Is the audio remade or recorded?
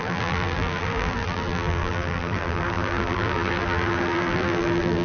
remade